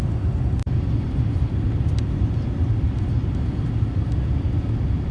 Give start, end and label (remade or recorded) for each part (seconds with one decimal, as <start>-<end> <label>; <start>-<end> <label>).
0.0-5.1 recorded